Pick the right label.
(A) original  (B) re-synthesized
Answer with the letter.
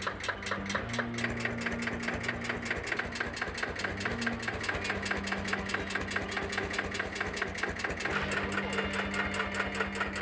A